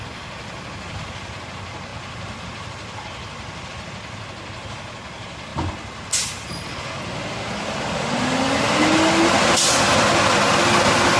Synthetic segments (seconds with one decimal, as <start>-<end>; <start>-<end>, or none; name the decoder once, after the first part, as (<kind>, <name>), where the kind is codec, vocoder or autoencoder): none